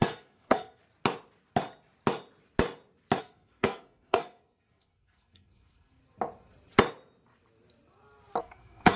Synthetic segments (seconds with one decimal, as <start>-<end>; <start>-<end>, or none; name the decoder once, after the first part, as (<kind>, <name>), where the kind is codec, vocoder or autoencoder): 0.0-0.8 (codec, SNAC); 3.2-6.0; 8.4-9.0